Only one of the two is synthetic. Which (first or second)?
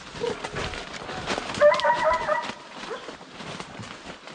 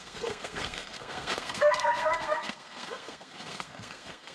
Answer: second